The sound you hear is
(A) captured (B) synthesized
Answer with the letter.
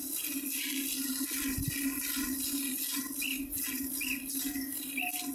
A